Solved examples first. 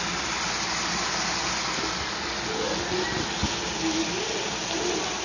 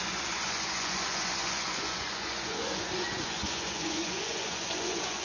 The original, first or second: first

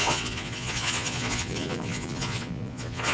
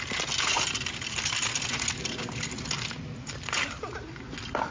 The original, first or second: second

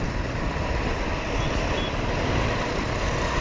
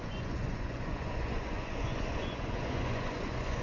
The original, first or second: first